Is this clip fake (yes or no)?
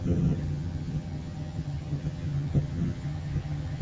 yes